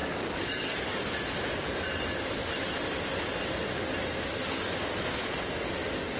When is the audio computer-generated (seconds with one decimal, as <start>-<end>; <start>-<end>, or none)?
0.0-1.0